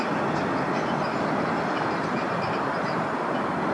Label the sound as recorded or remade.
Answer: recorded